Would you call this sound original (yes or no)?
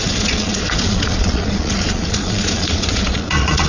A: no